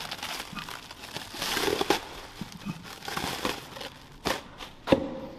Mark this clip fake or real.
real